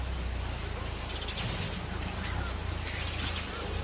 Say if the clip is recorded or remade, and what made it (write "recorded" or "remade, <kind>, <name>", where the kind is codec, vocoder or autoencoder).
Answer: recorded